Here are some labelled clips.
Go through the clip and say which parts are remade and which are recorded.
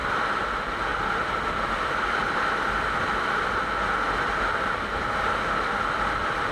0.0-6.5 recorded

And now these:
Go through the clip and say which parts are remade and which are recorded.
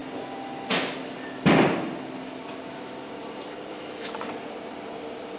0.0-3.7 recorded; 3.7-4.2 remade; 4.2-5.4 recorded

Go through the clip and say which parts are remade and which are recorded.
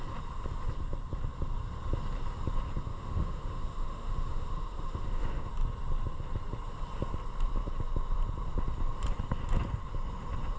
0.0-2.9 recorded; 2.9-5.5 remade; 5.5-10.6 recorded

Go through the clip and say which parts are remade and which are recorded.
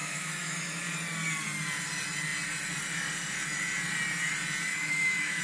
0.0-0.8 remade; 0.8-4.7 recorded; 4.7-5.4 remade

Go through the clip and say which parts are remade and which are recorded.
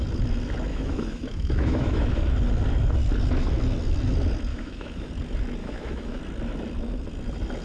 0.0-0.7 recorded; 0.7-2.2 remade; 2.2-4.5 recorded; 4.5-5.1 remade; 5.1-5.6 recorded; 5.6-6.2 remade; 6.2-7.6 recorded